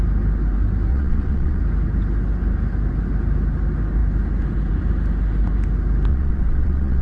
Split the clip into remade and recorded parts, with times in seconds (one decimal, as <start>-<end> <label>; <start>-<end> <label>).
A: 0.0-0.9 recorded; 0.9-1.6 remade; 1.6-6.1 recorded; 6.1-7.0 remade